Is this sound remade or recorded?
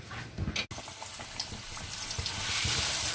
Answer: recorded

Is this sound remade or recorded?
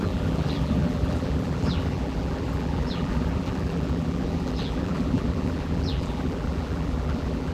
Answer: remade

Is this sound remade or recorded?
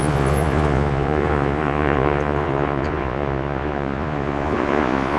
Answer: remade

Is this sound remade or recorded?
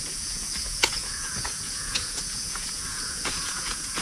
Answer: remade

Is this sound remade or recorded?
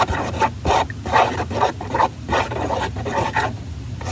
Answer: recorded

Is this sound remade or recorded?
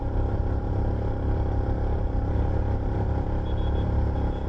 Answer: remade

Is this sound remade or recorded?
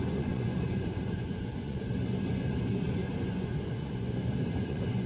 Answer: remade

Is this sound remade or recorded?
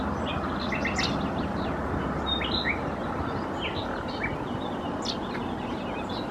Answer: recorded